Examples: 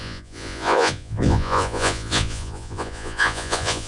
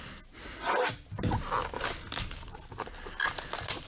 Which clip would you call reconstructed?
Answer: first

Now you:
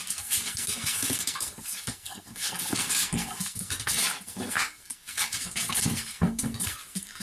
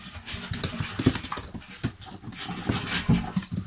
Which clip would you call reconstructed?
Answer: first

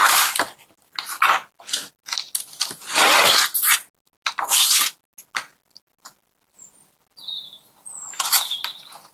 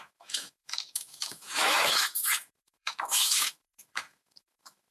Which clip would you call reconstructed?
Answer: second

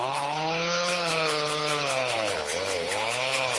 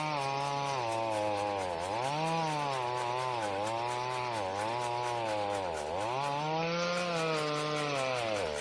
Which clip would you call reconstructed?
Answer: first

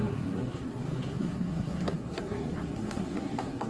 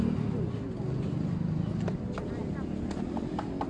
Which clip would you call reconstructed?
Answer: first